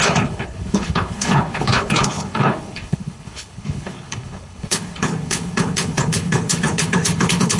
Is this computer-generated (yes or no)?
yes